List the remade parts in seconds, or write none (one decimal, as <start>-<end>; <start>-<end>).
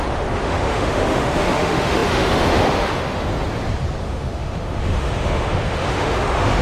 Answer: 0.0-3.3; 4.0-6.6